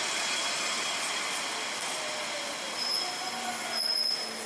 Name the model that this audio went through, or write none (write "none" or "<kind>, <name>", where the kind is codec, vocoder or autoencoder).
none